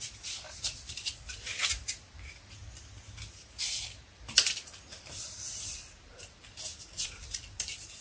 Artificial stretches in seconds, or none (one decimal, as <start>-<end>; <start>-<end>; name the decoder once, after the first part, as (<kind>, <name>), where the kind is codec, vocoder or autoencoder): 0.0-2.6 (vocoder, BigVGAN v2); 5.0-8.0